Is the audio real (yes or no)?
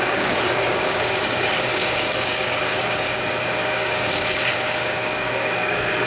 no